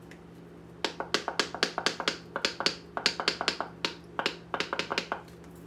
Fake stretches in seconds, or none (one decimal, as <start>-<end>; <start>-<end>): none